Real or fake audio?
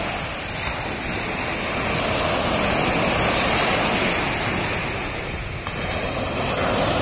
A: real